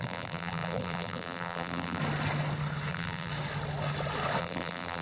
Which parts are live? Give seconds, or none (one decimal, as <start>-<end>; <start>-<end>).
2.0-2.9; 3.3-4.4